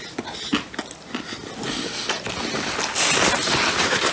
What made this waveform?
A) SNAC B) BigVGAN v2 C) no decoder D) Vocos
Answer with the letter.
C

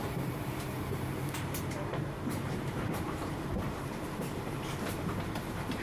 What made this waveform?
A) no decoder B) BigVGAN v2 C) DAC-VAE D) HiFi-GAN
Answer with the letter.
B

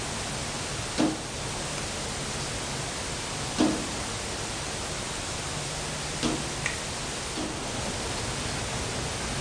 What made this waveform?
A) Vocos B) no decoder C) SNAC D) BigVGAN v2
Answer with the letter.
B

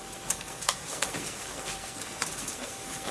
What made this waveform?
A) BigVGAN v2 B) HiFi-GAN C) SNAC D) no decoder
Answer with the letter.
C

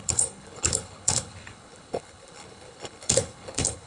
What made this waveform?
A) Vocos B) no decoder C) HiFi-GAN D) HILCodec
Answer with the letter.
D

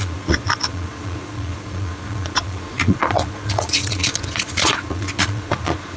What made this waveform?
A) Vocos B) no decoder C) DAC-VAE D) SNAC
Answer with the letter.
A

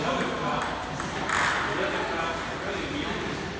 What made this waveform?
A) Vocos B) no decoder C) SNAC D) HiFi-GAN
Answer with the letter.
B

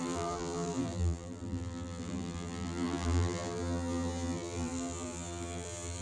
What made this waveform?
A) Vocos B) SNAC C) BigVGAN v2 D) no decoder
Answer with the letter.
C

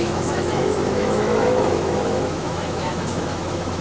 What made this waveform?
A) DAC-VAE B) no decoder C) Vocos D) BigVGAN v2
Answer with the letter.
A